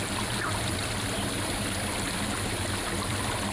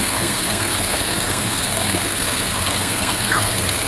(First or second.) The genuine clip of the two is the first